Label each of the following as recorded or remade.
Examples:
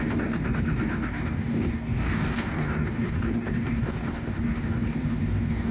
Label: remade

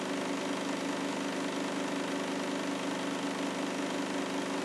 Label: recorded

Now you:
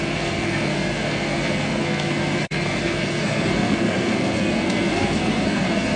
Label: remade